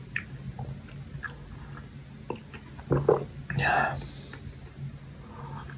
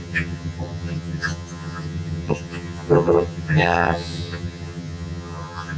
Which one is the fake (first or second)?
second